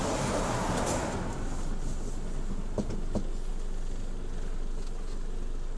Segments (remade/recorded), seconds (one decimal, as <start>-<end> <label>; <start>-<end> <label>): 0.0-5.8 recorded